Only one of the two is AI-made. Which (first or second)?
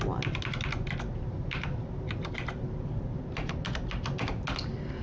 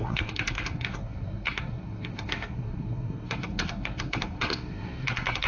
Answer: second